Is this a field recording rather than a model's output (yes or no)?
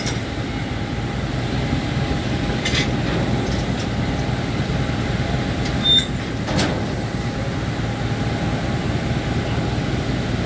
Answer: yes